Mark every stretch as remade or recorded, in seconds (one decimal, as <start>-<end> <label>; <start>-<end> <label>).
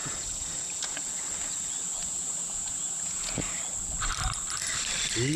0.0-1.1 remade; 1.1-2.0 recorded; 2.0-3.4 remade; 3.4-5.4 recorded